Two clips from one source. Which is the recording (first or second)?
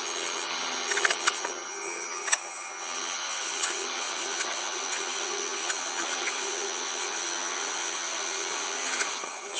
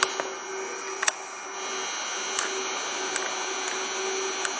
second